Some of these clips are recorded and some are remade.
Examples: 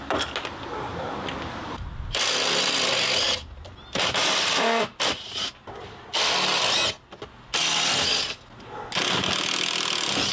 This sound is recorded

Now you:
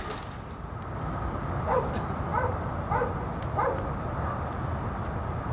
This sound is recorded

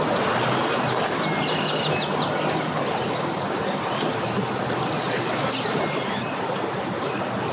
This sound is recorded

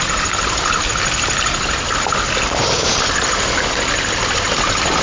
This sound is recorded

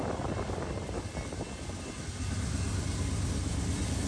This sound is recorded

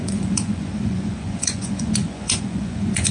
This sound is remade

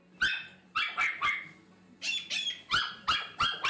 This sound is recorded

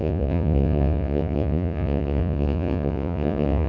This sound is remade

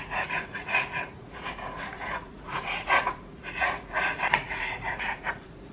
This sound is remade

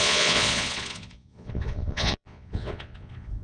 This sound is remade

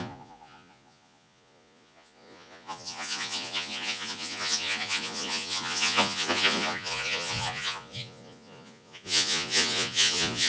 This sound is remade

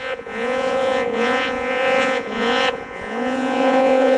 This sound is remade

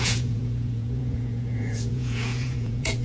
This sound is remade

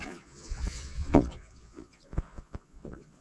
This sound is remade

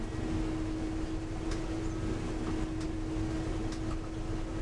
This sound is recorded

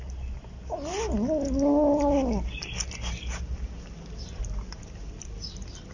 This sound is recorded